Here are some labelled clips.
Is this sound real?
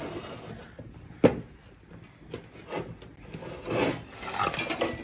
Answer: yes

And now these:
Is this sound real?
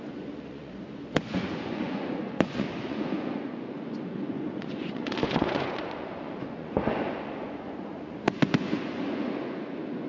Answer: no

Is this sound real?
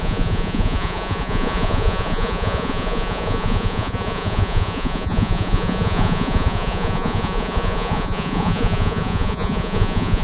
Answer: no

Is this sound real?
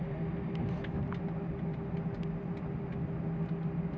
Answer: yes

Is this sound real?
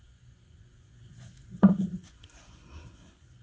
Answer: no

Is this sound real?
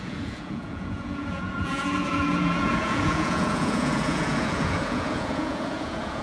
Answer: no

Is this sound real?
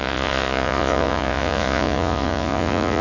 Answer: no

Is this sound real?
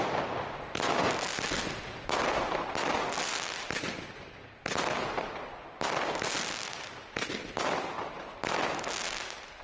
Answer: yes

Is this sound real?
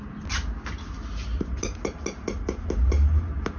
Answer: yes